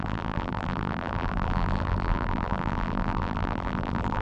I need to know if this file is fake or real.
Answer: fake